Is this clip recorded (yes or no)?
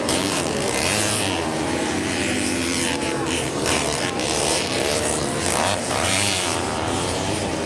no